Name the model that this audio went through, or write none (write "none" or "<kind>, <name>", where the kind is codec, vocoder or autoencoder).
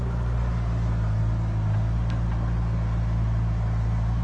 none